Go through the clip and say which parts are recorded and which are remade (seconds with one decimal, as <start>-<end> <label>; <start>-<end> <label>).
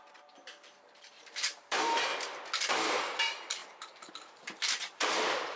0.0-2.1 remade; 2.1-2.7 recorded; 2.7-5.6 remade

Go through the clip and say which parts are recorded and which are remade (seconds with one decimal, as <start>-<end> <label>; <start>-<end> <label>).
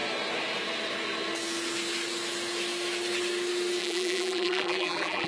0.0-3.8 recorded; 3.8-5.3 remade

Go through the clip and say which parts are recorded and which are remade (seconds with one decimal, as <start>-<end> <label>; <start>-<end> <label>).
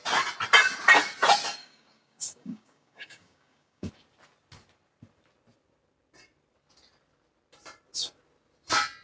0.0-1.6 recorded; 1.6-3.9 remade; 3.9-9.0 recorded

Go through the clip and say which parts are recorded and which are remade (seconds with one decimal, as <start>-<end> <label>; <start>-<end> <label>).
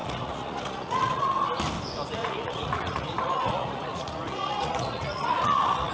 0.0-1.4 remade; 1.4-2.2 recorded; 2.2-5.9 remade